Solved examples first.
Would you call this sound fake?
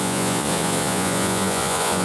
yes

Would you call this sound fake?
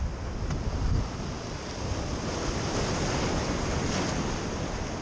no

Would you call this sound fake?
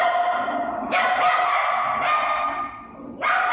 no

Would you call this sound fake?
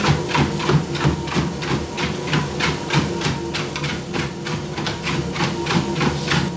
no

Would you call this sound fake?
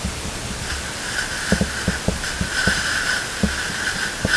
yes